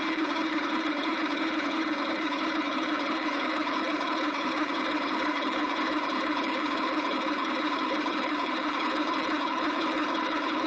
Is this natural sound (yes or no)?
no